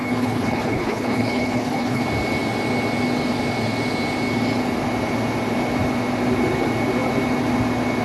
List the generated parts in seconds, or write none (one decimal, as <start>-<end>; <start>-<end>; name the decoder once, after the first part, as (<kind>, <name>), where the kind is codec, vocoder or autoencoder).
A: 0.0-2.0 (codec, HILCodec)

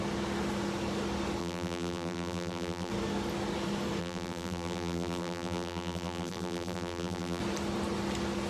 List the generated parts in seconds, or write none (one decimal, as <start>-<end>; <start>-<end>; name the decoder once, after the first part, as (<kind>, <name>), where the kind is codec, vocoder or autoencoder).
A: 1.4-2.9 (vocoder, BigVGAN v2); 4.0-7.4

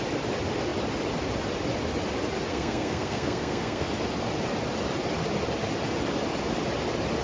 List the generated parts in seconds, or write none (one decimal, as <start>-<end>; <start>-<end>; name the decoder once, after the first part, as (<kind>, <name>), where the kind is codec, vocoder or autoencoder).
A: 2.5-3.9 (codec, SNAC)

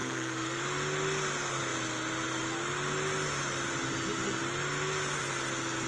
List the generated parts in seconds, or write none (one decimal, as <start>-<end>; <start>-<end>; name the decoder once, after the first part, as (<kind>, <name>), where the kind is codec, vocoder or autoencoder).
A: 0.0-0.6 (codec, SNAC)

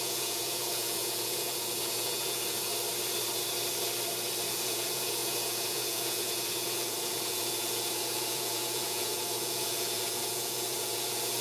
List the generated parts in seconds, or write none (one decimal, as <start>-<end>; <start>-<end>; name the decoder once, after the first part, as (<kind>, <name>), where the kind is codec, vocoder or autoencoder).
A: 0.0-2.7 (vocoder, Vocos); 4.5-11.4

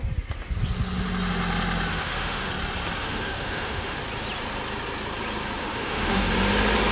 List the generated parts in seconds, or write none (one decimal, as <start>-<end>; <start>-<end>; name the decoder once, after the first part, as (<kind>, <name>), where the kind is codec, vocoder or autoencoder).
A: 1.9-2.5 (autoencoder, DAC-VAE); 3.0-4.0; 5.6-6.2

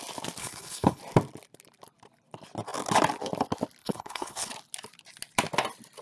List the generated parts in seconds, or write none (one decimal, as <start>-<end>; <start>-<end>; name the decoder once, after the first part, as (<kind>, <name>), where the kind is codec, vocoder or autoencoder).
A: 0.4-1.0 (codec, HILCodec); 3.8-4.5

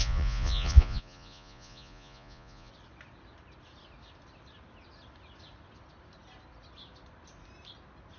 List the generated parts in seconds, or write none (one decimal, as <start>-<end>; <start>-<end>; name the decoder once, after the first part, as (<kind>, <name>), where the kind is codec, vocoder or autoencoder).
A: 0.0-2.7 (vocoder, Vocos)